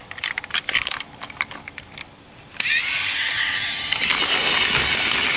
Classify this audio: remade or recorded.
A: recorded